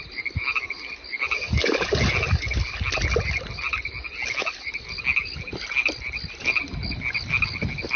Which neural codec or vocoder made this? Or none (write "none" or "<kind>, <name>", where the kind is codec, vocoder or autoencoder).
none